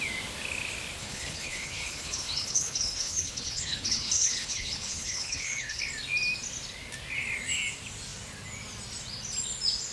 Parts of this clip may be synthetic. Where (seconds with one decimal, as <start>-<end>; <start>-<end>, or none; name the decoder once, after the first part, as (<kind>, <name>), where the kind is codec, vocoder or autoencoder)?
1.0-5.8 (codec, HILCodec)